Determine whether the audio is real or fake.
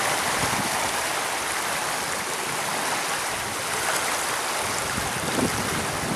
real